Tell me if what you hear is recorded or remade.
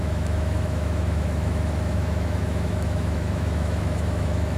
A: remade